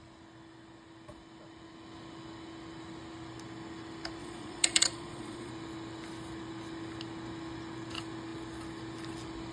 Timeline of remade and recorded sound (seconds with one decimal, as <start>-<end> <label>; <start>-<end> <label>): 0.0-4.2 recorded; 4.2-5.5 remade; 5.5-9.5 recorded